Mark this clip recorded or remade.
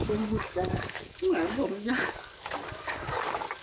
remade